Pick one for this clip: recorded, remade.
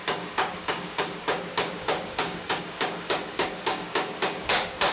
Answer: remade